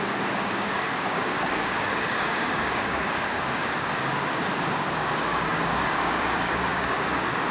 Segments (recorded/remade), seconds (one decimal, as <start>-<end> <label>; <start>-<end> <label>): 0.0-7.5 remade

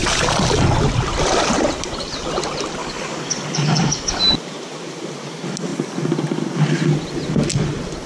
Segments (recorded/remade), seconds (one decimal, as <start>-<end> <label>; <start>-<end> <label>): 0.0-2.8 recorded; 2.8-4.2 remade; 4.2-8.1 recorded

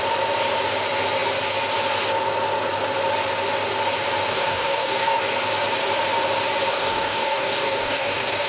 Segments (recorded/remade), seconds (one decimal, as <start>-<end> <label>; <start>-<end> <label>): 0.0-4.3 recorded; 4.3-5.2 remade; 5.2-6.7 recorded; 6.7-8.5 remade

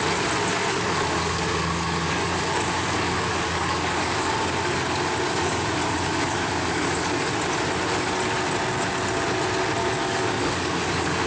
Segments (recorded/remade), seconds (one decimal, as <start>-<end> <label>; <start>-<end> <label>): 0.0-0.5 recorded; 0.5-4.3 remade; 4.3-5.4 recorded; 5.4-7.3 remade; 7.3-9.8 recorded; 9.8-11.3 remade

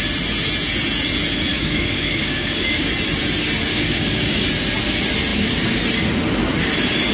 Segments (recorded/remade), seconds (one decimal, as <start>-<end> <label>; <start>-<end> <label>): 0.0-1.5 recorded; 1.5-2.9 remade; 2.9-3.7 recorded; 3.7-4.5 remade; 4.5-7.1 recorded

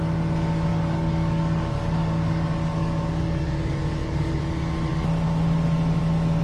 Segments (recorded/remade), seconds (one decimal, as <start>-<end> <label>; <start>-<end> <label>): 0.0-0.7 recorded; 0.7-4.4 remade; 4.4-6.4 recorded

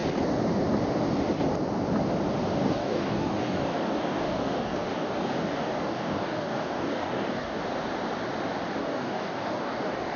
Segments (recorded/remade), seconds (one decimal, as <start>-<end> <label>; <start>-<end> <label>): 0.0-2.6 recorded; 2.6-7.6 remade; 7.6-8.8 recorded; 8.8-10.2 remade